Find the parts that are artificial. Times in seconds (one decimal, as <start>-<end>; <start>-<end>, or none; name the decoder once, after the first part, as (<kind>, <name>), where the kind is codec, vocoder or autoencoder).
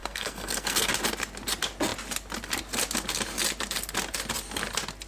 0.0-0.9 (codec, SNAC)